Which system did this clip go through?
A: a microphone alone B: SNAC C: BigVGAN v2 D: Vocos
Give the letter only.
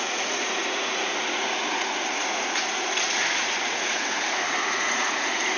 D